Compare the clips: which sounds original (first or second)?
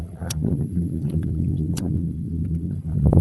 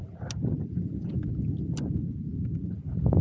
second